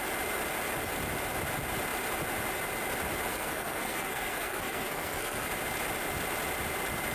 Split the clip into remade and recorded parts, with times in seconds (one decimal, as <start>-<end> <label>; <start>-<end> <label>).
0.0-3.3 recorded; 3.3-5.5 remade; 5.5-7.1 recorded